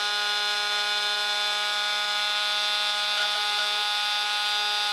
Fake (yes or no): no